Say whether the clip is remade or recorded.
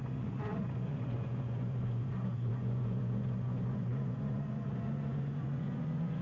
remade